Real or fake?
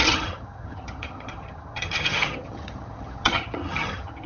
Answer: fake